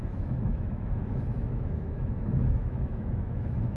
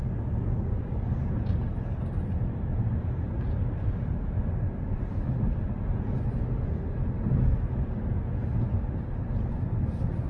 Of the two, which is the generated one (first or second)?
first